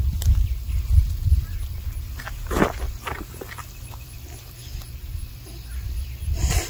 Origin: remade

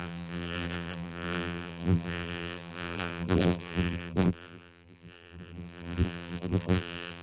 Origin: remade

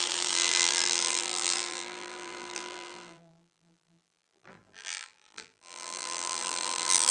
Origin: remade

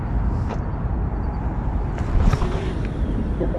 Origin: remade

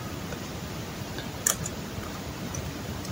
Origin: remade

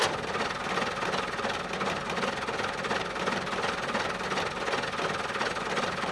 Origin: recorded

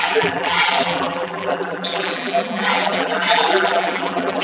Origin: remade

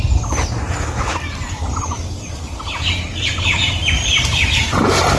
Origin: recorded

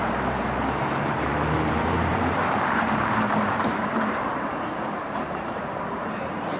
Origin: remade